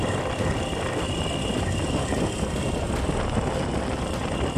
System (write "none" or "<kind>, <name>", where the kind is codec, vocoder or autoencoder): none